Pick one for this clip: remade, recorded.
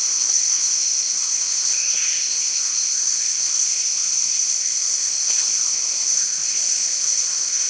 remade